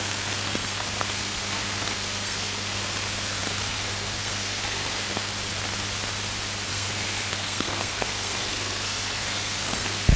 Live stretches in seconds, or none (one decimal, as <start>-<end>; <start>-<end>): 5.3-6.7